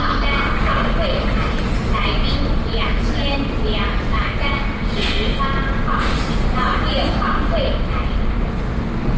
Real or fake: real